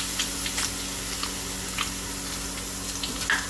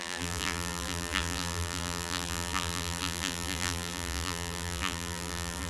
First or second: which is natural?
first